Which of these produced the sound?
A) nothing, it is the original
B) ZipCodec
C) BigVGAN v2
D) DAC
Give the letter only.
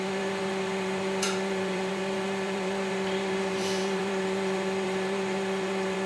C